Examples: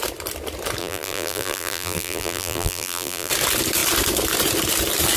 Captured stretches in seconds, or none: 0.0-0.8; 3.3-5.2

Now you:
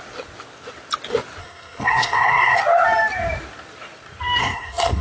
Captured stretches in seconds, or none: 0.0-1.4; 2.6-4.4

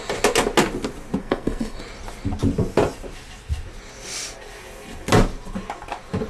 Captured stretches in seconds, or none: 0.0-1.2; 1.8-6.3

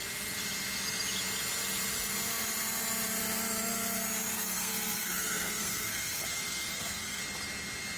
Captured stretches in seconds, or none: 0.0-4.3; 7.2-8.0

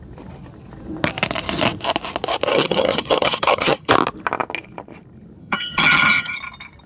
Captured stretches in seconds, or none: 0.0-2.5; 3.9-5.4; 6.4-6.9